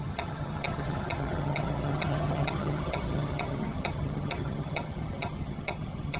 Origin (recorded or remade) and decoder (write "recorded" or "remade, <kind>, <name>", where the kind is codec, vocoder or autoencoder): remade, vocoder, HiFi-GAN